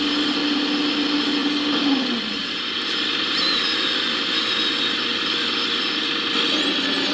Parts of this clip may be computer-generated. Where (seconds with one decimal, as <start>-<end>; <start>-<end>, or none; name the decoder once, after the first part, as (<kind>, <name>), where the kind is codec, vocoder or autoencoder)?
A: none